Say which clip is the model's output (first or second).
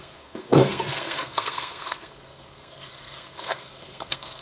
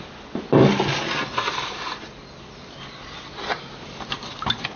first